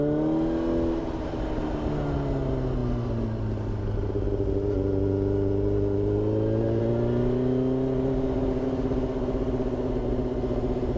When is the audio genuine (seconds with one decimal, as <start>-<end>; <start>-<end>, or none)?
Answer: 0.0-11.0